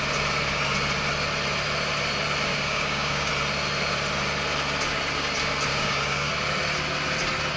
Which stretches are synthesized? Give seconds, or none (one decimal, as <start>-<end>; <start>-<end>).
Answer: 2.5-3.3; 5.7-6.3